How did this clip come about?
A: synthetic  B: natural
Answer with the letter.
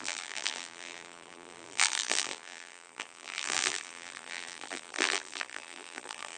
A